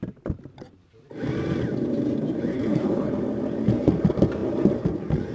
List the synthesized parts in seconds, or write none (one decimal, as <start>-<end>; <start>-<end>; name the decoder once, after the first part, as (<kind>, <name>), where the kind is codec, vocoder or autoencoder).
2.5-3.1 (codec, HILCodec)